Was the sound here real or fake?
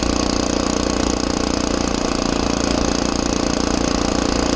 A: real